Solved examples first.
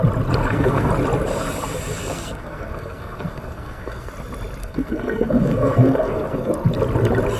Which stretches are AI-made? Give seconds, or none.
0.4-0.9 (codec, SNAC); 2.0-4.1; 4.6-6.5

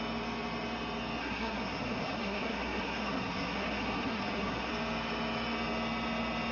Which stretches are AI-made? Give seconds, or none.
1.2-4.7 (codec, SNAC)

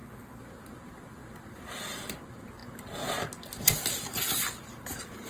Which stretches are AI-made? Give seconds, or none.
0.0-1.7 (vocoder, BigVGAN v2)

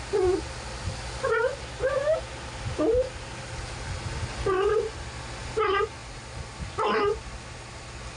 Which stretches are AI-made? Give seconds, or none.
none